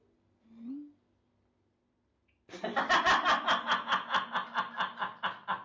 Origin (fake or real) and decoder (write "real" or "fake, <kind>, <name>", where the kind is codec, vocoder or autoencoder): real